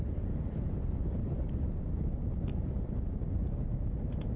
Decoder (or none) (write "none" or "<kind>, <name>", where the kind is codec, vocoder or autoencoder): none